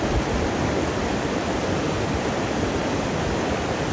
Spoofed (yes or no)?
no